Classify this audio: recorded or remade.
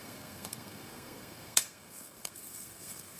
remade